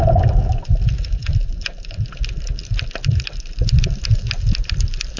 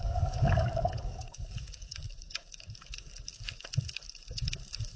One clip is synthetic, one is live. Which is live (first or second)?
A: first